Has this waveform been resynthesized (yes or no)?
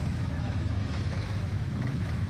yes